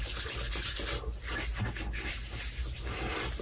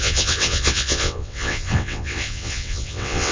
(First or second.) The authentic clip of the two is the first